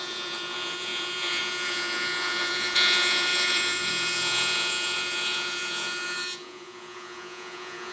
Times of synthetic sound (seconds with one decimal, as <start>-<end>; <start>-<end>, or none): 0.0-7.9